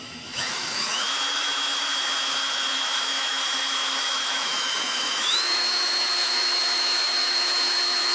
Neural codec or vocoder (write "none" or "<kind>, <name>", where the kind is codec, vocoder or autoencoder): autoencoder, DAC-VAE